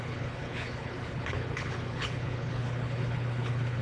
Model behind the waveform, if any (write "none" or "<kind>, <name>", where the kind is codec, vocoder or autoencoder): codec, HILCodec